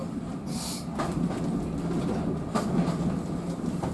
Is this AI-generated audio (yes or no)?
no